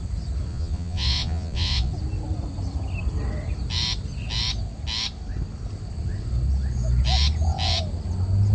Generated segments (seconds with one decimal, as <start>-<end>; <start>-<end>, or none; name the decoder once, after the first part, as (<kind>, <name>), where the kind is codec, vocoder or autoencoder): 0.5-1.9 (vocoder, Vocos)